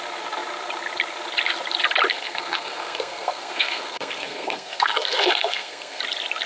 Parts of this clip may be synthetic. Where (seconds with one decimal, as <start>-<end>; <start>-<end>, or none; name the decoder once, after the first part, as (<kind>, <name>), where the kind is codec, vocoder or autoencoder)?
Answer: 2.1-6.0 (codec, SNAC)